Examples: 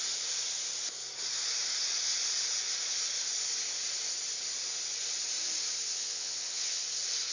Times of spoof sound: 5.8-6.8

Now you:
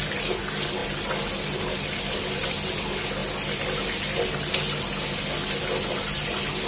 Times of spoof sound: none

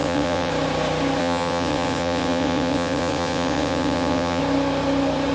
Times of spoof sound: 0.0-0.5; 1.2-4.4

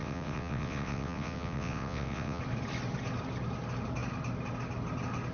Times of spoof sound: 0.0-2.4

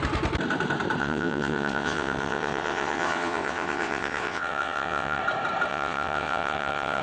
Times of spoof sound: 1.0-5.2; 5.7-7.0

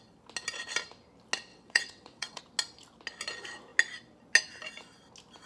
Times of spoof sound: 1.5-2.4